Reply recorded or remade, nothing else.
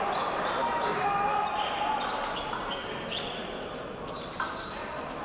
recorded